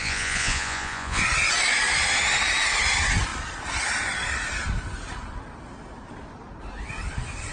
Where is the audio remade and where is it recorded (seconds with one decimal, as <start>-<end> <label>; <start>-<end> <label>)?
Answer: 0.0-1.2 remade; 1.2-7.5 recorded